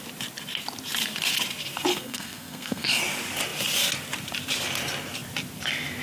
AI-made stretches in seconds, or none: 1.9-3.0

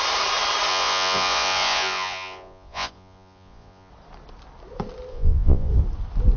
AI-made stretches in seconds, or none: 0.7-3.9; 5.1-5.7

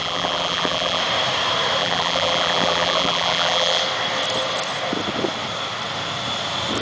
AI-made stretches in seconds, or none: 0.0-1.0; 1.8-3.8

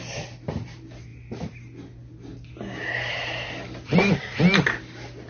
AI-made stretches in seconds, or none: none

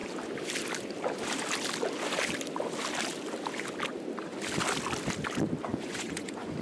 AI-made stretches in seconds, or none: 5.7-6.6